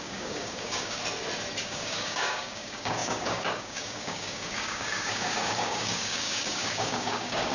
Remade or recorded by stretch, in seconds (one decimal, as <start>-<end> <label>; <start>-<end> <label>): 0.0-1.0 remade; 1.0-1.6 recorded; 1.6-7.5 remade